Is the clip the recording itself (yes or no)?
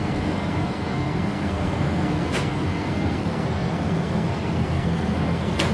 no